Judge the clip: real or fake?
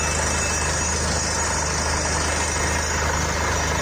real